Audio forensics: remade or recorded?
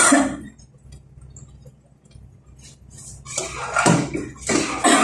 recorded